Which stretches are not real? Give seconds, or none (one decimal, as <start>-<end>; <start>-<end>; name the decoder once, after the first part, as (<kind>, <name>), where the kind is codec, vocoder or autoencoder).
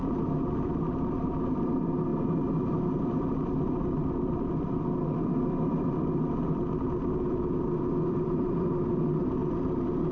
0.0-10.1 (vocoder, BigVGAN v2)